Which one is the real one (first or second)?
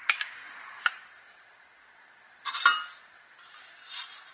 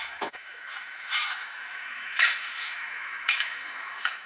first